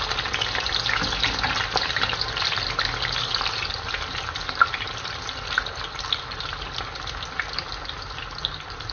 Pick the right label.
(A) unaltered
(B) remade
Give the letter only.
A